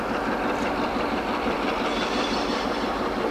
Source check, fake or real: real